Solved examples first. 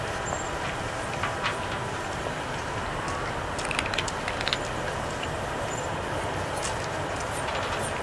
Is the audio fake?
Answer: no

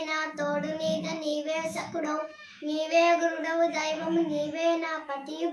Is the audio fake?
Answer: yes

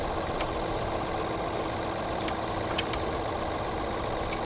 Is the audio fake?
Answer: no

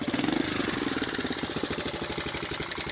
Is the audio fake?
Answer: no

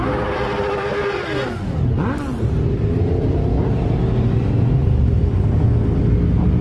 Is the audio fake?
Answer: no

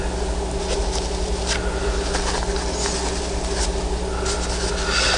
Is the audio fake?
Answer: no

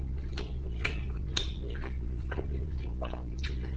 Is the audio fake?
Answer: yes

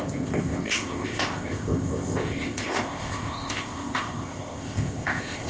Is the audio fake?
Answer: yes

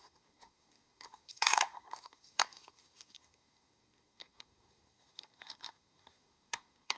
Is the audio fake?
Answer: yes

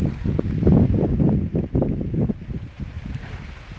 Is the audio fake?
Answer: no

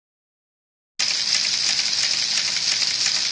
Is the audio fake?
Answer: no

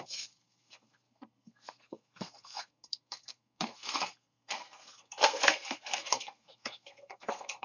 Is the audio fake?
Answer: yes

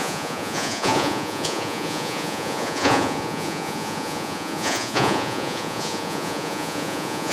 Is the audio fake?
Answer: yes